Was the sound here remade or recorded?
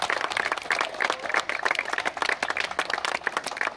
recorded